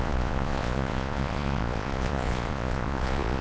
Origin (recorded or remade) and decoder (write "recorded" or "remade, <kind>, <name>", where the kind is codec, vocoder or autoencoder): remade, vocoder, Vocos